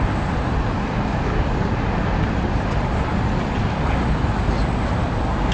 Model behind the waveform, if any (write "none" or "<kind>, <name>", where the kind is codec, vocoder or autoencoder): none